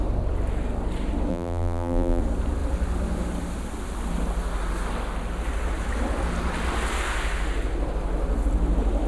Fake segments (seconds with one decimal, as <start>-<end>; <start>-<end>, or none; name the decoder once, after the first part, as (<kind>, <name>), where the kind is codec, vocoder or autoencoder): 1.3-2.2 (vocoder, BigVGAN v2)